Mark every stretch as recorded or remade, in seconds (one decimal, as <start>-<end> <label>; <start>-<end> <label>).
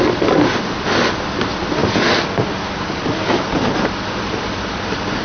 0.0-5.2 recorded